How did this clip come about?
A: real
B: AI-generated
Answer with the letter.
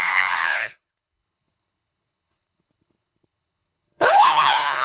B